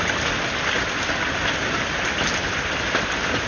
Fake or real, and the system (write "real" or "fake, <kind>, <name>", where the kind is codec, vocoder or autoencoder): real